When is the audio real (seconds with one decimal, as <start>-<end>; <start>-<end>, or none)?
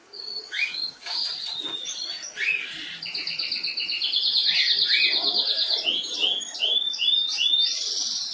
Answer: 1.2-8.3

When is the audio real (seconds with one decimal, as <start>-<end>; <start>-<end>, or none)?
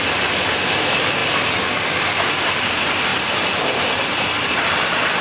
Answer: 0.0-5.2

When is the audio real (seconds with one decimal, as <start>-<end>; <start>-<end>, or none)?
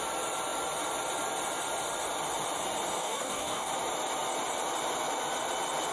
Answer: 0.0-3.0; 3.7-5.9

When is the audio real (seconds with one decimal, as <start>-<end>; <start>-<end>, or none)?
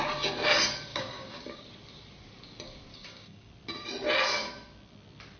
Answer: 0.0-0.9; 1.6-2.9; 3.5-5.4